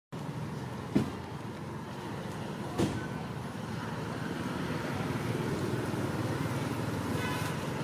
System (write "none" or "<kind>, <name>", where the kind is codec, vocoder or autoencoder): none